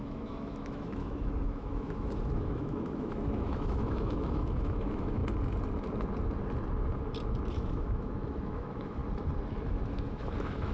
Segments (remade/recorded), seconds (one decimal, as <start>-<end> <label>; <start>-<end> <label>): 0.0-5.2 remade; 5.2-7.5 recorded; 7.5-9.0 remade; 9.0-9.7 recorded; 9.7-10.7 remade